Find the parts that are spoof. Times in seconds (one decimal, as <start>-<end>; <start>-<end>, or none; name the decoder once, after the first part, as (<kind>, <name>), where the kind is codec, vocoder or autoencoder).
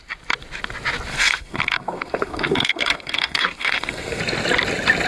1.1-4.2 (codec, SNAC)